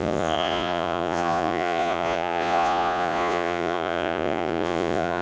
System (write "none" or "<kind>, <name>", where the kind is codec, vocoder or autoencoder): vocoder, Vocos